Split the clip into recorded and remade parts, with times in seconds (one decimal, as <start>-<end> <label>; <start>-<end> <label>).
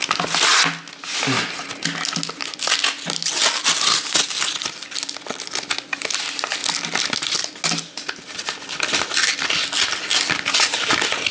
0.0-11.3 recorded